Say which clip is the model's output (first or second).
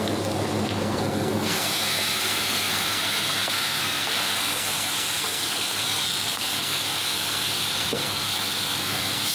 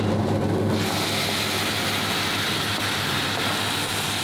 first